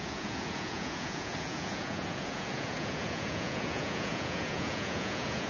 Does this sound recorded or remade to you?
remade